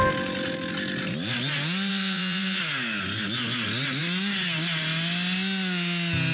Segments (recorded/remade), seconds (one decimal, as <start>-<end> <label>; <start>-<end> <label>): 0.0-1.9 recorded; 1.9-2.6 remade; 2.6-6.3 recorded